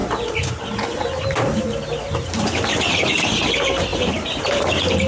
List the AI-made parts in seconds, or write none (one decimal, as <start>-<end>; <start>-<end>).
2.9-5.1